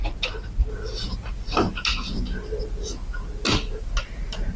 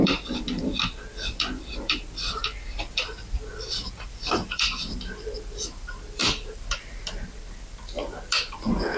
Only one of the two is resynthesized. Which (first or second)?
second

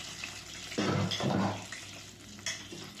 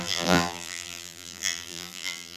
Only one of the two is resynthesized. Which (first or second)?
second